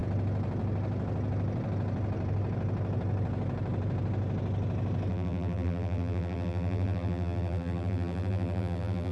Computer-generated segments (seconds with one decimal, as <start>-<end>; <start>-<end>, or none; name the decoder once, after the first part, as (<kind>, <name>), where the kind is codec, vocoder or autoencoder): 5.1-9.1 (vocoder, BigVGAN v2)

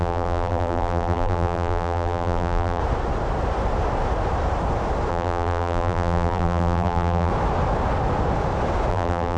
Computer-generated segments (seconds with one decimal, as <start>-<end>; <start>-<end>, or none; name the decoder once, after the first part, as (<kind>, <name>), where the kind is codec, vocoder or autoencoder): 0.0-2.8 (vocoder, BigVGAN v2); 5.1-7.3; 8.9-9.4

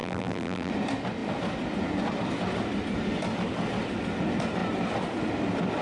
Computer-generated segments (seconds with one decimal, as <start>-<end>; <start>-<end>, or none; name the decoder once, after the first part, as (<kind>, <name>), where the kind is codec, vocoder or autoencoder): 0.0-0.7 (vocoder, BigVGAN v2)

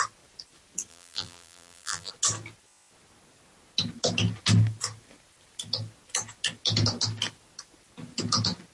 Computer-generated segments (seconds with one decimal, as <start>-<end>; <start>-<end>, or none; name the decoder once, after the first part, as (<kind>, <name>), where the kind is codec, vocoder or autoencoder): 0.9-2.1 (vocoder, BigVGAN v2)

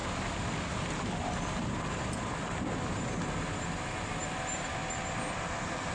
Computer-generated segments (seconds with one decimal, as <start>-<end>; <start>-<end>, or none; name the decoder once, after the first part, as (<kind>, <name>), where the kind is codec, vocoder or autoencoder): 0.0-2.1 (vocoder, BigVGAN v2)